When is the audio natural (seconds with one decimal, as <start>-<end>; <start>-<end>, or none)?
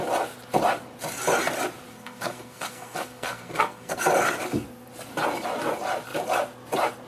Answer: 0.0-1.9; 4.0-7.1